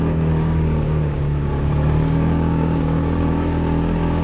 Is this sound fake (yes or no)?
yes